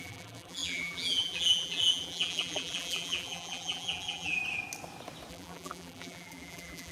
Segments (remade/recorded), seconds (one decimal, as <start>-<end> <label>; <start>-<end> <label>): 0.0-4.4 remade; 4.4-5.3 recorded; 5.3-6.9 remade